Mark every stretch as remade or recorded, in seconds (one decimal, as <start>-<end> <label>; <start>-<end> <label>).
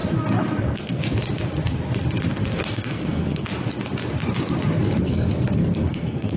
0.0-0.6 recorded; 0.6-1.0 remade; 1.0-2.6 recorded; 2.6-3.5 remade; 3.5-5.0 recorded; 5.0-6.4 remade